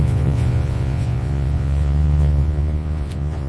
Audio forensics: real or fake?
fake